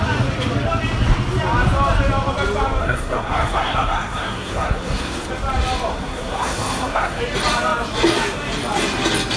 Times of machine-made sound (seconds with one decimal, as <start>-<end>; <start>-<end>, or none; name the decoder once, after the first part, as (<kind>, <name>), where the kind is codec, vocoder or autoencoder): 2.8-5.3 (codec, SNAC); 5.9-7.2